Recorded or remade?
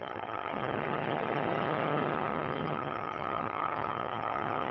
remade